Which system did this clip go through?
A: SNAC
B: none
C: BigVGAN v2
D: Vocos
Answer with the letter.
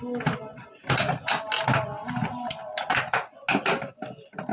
B